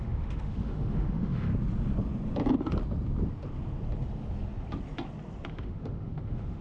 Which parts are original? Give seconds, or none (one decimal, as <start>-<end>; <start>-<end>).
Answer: 1.5-5.5